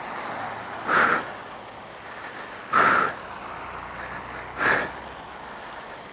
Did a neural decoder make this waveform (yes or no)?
no